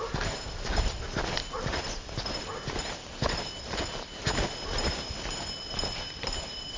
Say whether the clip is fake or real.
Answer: real